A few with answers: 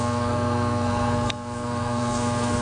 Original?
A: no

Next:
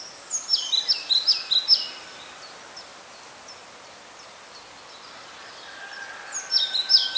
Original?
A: yes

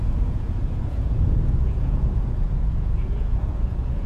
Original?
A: no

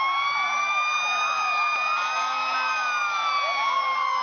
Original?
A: yes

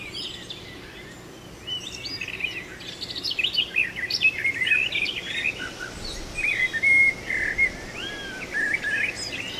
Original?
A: yes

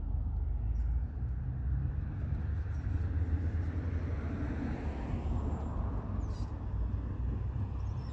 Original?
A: yes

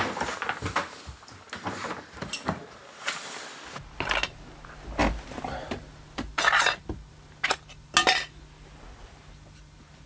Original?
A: yes